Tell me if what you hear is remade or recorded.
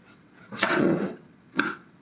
remade